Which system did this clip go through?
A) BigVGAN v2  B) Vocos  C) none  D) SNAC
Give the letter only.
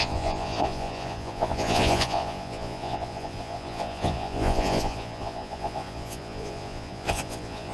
B